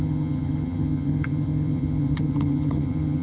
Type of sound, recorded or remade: remade